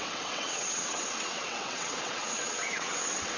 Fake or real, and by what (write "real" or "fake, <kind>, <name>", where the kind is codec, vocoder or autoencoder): fake, vocoder, WaveNeXt